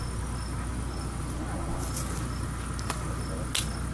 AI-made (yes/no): no